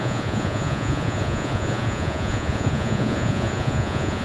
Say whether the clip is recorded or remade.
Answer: remade